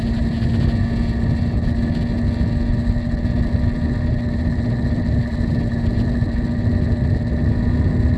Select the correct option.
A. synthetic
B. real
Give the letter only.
B